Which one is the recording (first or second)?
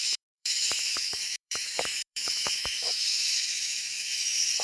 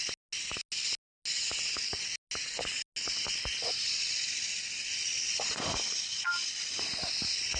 second